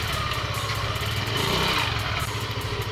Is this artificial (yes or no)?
no